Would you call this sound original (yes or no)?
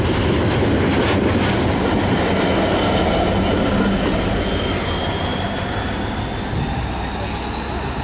yes